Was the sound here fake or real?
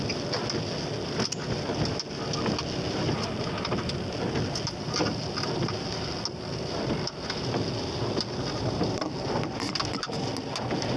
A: real